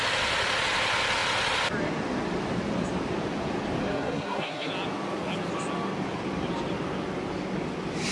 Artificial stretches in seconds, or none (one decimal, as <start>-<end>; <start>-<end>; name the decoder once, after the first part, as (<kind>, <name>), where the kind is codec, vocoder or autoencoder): 3.8-4.7 (codec, SNAC)